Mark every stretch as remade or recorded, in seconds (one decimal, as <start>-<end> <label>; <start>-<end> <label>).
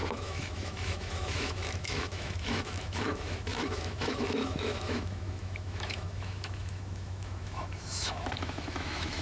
0.0-9.2 remade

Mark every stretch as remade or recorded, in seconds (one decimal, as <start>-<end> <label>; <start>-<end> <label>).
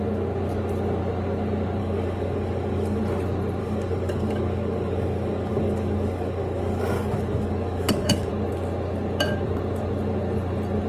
0.0-1.8 recorded; 1.8-3.0 remade; 3.0-3.6 recorded; 3.6-8.3 remade; 8.3-10.9 recorded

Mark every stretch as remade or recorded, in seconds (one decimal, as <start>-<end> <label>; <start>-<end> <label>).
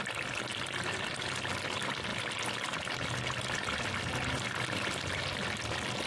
0.0-6.1 recorded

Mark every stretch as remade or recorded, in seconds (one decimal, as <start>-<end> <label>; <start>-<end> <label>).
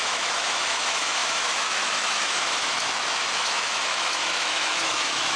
0.0-5.4 remade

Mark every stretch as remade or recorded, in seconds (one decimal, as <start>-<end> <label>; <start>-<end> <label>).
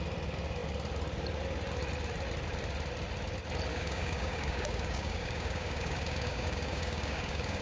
0.0-3.7 recorded; 3.7-7.6 remade